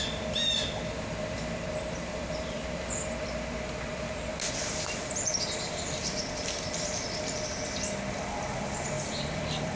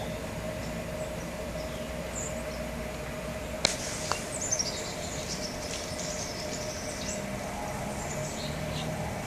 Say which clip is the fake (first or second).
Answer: first